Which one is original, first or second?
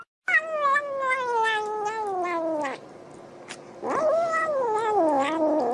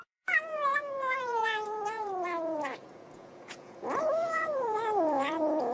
first